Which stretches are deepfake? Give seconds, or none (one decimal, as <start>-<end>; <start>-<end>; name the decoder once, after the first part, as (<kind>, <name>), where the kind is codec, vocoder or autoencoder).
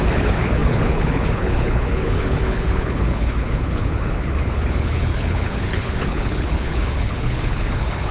0.0-8.1 (codec, HILCodec)